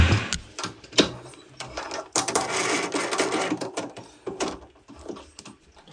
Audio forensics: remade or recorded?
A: recorded